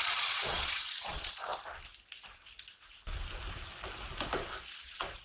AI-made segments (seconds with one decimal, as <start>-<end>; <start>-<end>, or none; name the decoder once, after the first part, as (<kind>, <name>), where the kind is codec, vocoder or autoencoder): 0.0-1.5 (vocoder, Vocos); 4.6-5.2